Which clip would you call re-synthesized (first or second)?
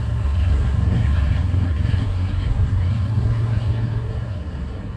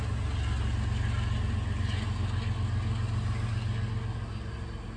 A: first